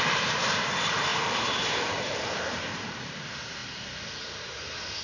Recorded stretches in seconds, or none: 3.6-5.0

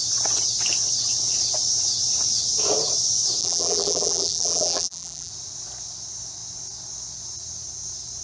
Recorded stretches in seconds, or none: 0.0-3.4; 5.3-8.2

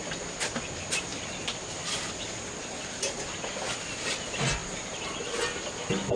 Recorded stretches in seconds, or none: 0.0-6.2

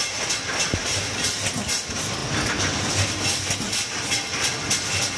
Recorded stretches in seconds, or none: 0.0-5.2

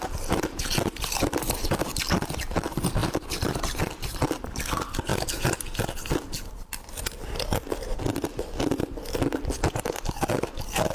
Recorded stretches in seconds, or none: 5.1-6.4

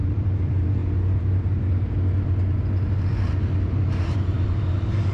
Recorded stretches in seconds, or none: 0.8-3.9

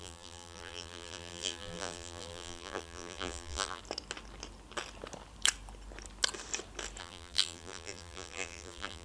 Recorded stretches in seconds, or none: 3.8-7.0

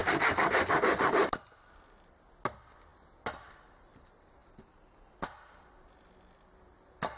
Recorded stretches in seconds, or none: 0.0-7.2